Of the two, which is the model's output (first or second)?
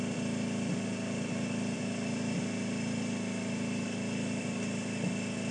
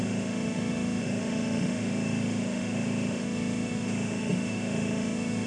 second